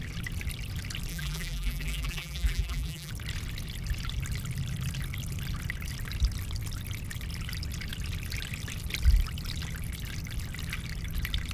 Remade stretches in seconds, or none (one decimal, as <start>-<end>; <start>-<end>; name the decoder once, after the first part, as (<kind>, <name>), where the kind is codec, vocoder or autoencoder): 1.1-3.1 (vocoder, BigVGAN v2)